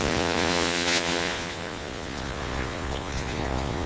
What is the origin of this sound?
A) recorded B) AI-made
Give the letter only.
B